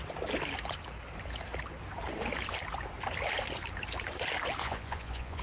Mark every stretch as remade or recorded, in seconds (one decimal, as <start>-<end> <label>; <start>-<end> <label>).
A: 0.0-4.6 recorded; 4.6-5.4 remade